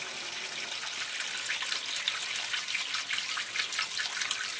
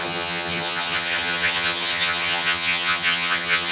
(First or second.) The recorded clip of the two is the first